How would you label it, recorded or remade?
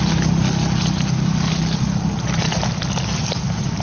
recorded